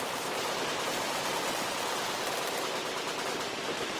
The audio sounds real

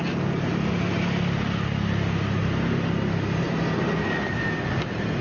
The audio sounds real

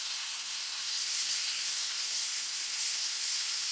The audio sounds fake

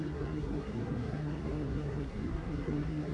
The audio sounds fake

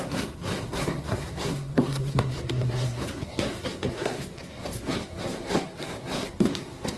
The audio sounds fake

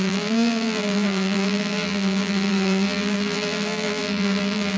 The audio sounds fake